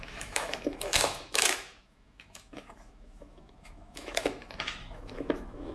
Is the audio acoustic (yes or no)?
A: no